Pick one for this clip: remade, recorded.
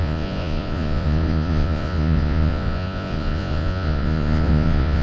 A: remade